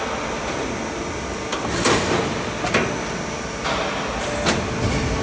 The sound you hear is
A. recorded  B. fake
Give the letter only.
A